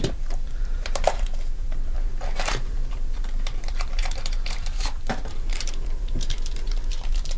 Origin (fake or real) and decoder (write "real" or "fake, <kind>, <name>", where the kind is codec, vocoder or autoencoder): fake, vocoder, BigVGAN v2